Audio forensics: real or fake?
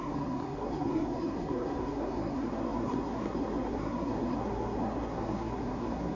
fake